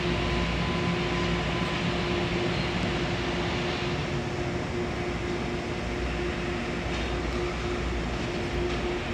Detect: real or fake real